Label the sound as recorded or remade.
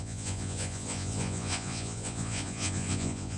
remade